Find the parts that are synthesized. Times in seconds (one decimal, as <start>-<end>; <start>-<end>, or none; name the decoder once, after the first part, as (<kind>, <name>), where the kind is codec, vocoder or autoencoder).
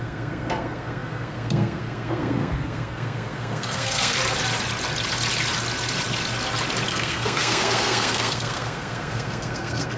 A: 0.0-4.2 (codec, SNAC); 6.9-10.0